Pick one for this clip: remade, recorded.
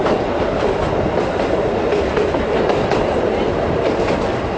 recorded